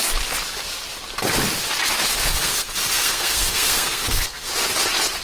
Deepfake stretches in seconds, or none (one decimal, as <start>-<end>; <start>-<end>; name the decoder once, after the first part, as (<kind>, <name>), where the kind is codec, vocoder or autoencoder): 2.3-4.5 (codec, SNAC)